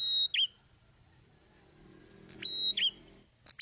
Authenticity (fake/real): real